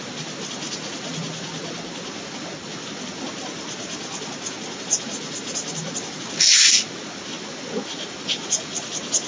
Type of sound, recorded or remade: recorded